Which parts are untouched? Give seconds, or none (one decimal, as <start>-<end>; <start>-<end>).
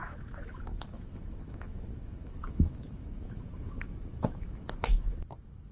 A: none